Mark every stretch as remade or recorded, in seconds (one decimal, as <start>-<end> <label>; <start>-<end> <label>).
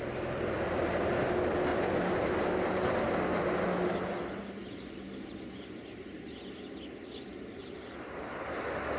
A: 0.0-1.7 recorded; 1.7-3.0 remade; 3.0-4.6 recorded; 4.6-6.4 remade; 6.4-7.3 recorded; 7.3-8.3 remade; 8.3-9.0 recorded